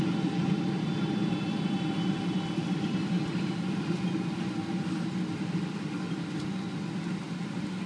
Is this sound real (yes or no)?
yes